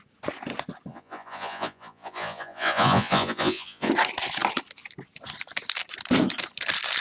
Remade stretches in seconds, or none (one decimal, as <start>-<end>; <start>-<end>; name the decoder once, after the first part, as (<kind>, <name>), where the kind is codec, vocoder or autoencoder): 0.9-3.9 (vocoder, Vocos)

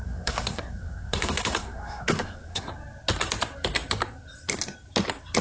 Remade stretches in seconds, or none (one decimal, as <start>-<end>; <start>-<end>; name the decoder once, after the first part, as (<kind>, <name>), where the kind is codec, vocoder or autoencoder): 0.0-2.7 (codec, SNAC)

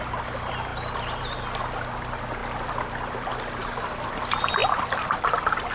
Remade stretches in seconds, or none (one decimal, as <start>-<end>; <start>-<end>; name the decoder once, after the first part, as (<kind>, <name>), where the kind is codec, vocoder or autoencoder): 2.4-3.3 (vocoder, BigVGAN v2)

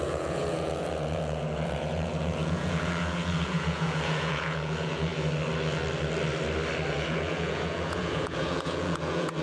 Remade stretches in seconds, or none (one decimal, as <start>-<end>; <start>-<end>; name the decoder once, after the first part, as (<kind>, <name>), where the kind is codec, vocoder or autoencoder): 0.0-5.1 (vocoder, Vocos); 6.9-9.4

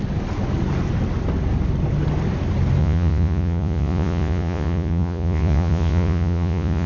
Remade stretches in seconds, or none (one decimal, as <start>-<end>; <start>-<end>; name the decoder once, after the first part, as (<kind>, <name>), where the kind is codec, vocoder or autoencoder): 2.8-6.9 (vocoder, Vocos)

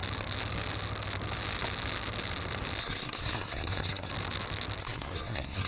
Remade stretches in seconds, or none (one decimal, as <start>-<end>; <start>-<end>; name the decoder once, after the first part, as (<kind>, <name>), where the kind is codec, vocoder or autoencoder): 2.8-4.1 (codec, SNAC); 4.8-5.7